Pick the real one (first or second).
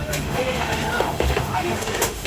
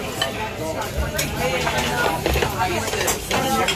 second